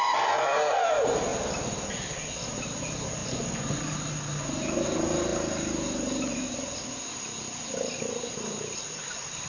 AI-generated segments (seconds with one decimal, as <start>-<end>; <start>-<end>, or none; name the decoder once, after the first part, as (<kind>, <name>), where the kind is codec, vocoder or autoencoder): 3.2-3.8 (vocoder, Vocos)